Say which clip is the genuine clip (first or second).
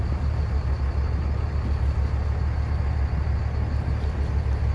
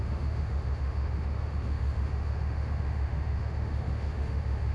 first